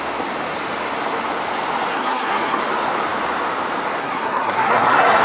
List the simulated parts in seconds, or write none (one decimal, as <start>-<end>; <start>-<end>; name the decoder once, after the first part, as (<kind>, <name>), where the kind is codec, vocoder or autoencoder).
1.9-2.6 (codec, SNAC); 4.0-5.2

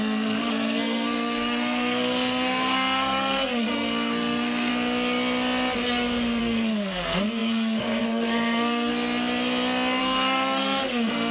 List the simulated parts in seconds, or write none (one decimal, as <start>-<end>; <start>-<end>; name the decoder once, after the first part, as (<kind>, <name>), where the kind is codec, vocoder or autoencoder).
0.0-4.7 (codec, SNAC); 6.4-8.9; 10.0-11.3

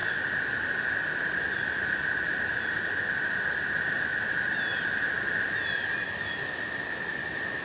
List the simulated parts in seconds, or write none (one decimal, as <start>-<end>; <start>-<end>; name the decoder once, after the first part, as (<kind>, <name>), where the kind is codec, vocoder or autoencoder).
none

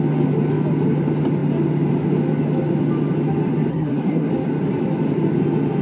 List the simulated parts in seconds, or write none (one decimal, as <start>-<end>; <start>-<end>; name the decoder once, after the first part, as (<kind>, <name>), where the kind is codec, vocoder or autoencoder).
3.7-4.3 (codec, SNAC)

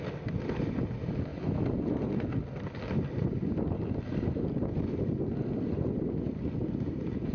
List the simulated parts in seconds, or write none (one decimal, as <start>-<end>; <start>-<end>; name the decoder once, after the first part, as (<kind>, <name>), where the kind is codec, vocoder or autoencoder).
none

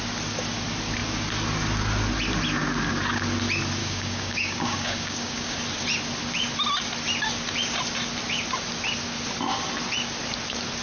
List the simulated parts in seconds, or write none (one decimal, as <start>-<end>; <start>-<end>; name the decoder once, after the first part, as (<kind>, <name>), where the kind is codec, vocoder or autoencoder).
3.8-5.6 (codec, DAC)

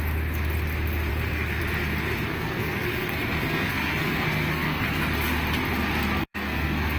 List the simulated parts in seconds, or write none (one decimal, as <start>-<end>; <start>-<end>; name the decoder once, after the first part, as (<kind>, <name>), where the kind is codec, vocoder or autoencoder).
1.1-1.6 (codec, SNAC); 2.3-5.0; 6.2-7.0